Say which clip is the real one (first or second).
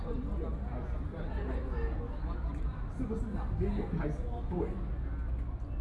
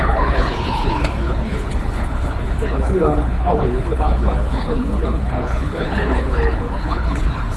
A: first